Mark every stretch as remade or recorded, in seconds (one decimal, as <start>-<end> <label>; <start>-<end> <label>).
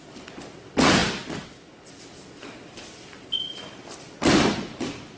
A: 0.0-5.2 recorded